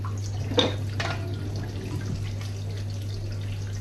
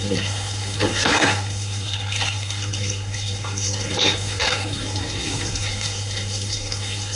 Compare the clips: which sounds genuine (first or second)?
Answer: first